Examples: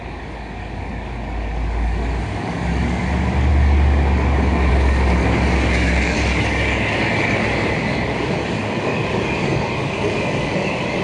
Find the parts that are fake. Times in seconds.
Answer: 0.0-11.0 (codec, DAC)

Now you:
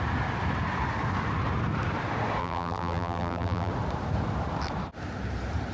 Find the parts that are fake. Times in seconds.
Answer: 2.4-3.7 (vocoder, BigVGAN v2)

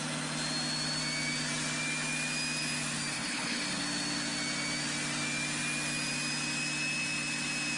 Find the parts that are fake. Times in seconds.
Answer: 3.1-3.8 (codec, HILCodec)

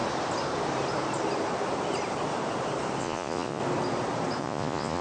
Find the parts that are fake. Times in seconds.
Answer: 3.0-3.6 (vocoder, Vocos); 4.4-5.0

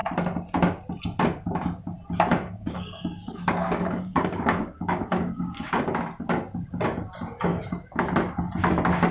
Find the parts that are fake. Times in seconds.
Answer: 2.3-5.8 (codec, DAC); 7.5-8.0

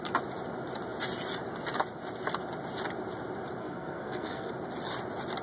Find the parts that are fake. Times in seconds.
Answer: 3.6-4.5 (codec, SNAC)

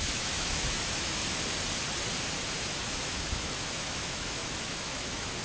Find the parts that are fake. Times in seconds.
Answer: 0.0-1.2 (autoencoder, DAC-VAE); 2.6-5.4